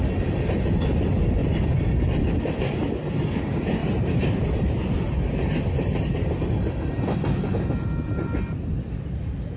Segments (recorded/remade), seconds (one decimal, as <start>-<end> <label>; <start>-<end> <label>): 0.0-3.8 recorded; 3.8-7.0 remade; 7.0-9.6 recorded